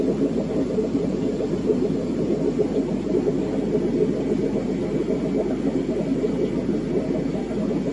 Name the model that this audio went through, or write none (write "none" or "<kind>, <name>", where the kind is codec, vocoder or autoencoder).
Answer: none